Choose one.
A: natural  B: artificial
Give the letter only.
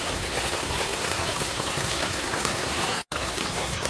B